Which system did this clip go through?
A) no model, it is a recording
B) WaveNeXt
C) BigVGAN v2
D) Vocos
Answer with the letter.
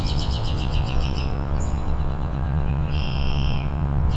B